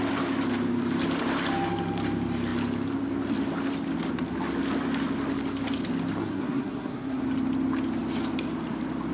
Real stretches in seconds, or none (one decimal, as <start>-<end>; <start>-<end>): 0.0-6.2; 7.3-9.1